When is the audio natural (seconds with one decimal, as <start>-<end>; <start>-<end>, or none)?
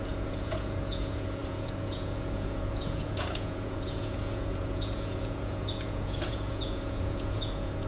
none